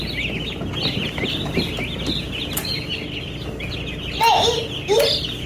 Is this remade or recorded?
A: recorded